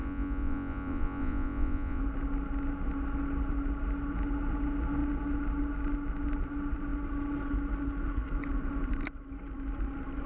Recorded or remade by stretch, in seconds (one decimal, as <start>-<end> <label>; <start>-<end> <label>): 0.0-2.0 remade; 2.0-10.3 recorded